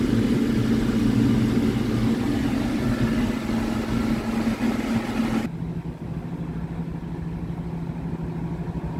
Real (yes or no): yes